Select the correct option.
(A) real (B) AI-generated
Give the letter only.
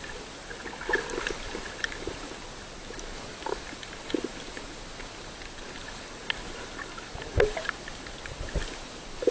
A